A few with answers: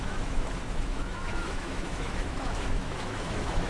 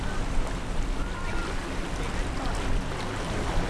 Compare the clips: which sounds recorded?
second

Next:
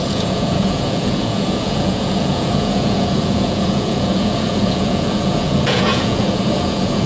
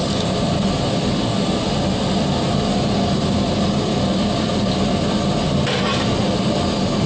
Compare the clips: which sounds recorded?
second